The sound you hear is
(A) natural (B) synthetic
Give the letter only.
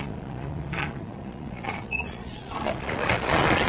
B